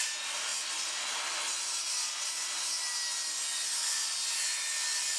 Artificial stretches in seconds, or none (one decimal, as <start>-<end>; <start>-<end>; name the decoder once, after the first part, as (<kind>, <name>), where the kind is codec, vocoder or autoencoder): none